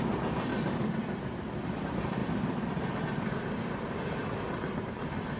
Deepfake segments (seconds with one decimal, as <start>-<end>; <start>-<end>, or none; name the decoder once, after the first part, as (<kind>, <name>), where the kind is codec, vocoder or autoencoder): 0.0-0.5 (vocoder, BigVGAN v2); 1.8-2.2; 4.8-5.4